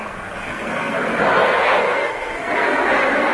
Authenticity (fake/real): fake